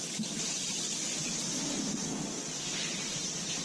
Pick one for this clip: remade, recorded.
recorded